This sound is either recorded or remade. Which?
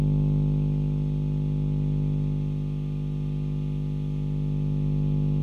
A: recorded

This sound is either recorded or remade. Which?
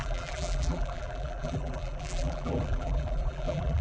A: remade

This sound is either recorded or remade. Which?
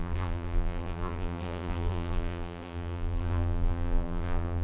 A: remade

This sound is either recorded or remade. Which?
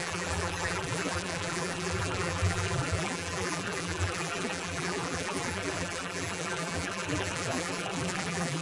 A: remade